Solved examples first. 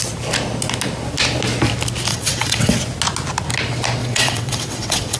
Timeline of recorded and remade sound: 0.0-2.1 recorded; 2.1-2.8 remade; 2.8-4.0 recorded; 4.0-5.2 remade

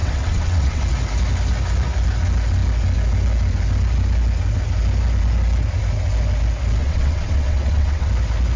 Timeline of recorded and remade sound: 0.0-0.8 remade; 0.8-6.8 recorded; 6.8-8.1 remade; 8.1-8.6 recorded

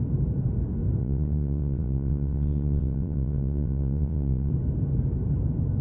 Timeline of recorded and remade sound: 0.0-1.0 recorded; 1.0-4.5 remade; 4.5-5.8 recorded